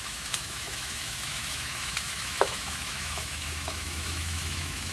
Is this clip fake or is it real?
fake